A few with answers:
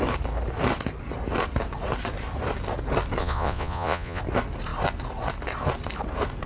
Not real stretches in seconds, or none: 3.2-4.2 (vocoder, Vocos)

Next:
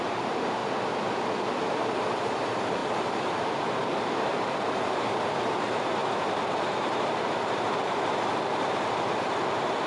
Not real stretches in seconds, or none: 0.0-0.6 (vocoder, BigVGAN v2); 1.6-6.0; 6.5-9.9

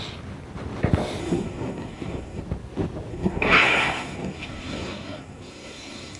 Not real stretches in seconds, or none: 1.2-2.4 (codec, SNAC); 3.1-6.2